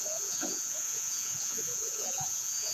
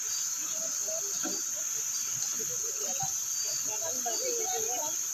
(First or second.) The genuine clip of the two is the second